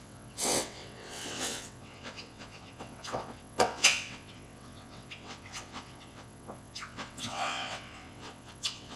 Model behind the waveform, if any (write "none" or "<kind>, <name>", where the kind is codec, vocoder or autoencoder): vocoder, WaveNeXt